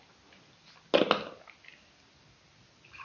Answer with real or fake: real